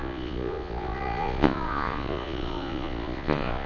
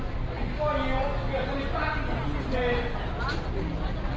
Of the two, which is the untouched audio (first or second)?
second